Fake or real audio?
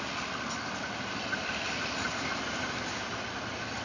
real